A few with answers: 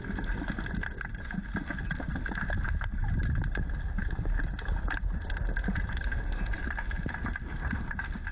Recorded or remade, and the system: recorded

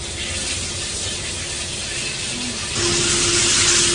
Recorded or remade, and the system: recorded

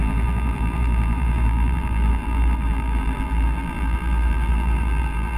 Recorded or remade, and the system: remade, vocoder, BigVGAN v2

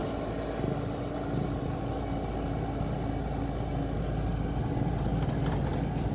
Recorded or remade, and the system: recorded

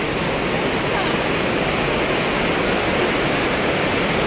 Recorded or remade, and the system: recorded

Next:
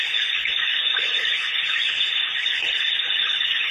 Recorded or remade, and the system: recorded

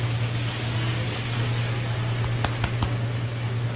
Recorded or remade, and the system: recorded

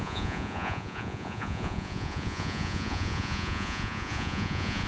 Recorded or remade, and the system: remade, vocoder, Vocos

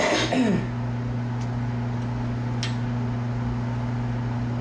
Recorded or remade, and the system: recorded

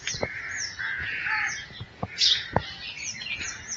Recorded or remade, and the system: remade, vocoder, Vocos